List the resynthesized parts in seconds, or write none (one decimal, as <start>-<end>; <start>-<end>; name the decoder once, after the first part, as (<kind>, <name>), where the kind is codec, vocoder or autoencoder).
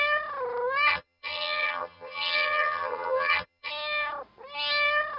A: 0.9-3.7 (vocoder, HiFi-GAN)